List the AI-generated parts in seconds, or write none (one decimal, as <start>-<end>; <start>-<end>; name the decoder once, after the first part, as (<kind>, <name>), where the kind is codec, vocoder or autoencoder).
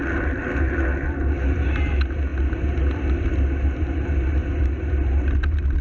none